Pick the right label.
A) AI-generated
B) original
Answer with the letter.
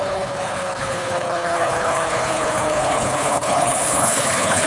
A